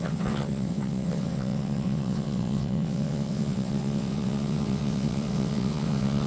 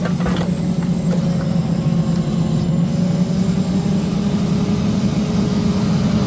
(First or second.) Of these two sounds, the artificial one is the first